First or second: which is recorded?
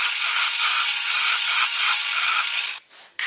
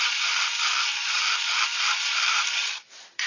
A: first